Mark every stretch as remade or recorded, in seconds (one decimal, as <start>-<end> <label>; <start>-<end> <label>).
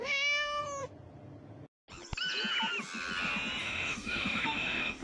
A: 0.0-0.6 remade; 0.6-3.6 recorded; 3.6-5.0 remade